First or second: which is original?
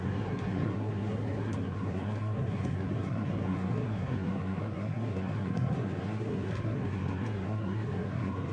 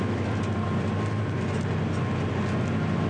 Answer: second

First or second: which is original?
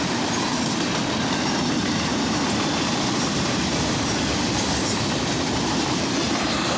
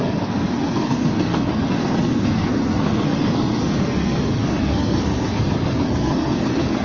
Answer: first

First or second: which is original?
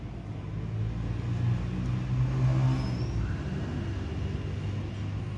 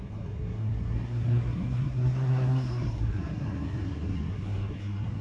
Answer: first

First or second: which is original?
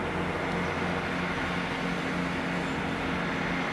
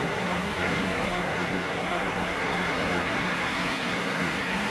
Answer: first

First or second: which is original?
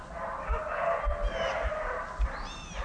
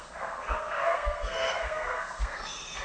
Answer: first